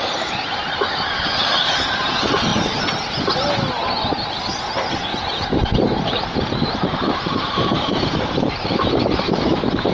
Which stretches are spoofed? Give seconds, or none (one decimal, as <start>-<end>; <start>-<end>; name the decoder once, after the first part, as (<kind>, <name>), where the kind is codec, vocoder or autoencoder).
5.1-9.9 (vocoder, BigVGAN v2)